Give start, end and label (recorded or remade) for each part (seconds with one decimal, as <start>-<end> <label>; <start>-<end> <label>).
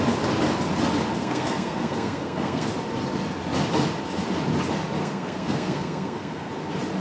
0.0-1.1 recorded; 1.1-2.7 remade; 2.7-5.0 recorded; 5.0-6.5 remade; 6.5-7.0 recorded